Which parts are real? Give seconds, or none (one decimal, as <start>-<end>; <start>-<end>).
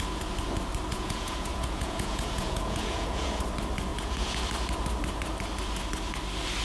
0.0-0.9; 3.4-3.9; 4.4-6.6